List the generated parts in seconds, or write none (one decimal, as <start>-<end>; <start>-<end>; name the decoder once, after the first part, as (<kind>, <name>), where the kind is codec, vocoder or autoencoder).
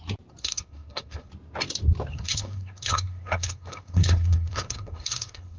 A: 0.4-1.3 (codec, SNAC); 2.1-5.6